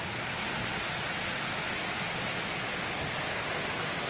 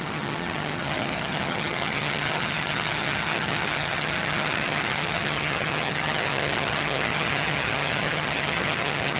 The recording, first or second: first